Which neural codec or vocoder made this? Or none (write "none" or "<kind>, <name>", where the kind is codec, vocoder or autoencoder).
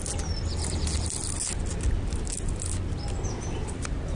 none